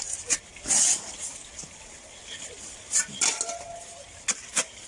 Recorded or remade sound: recorded